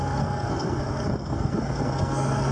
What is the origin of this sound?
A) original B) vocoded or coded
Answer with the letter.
B